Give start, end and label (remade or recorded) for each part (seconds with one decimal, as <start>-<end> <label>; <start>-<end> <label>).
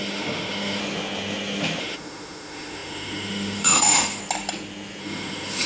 0.0-0.8 remade; 0.8-1.8 recorded; 1.8-4.2 remade; 4.2-5.0 recorded; 5.0-5.7 remade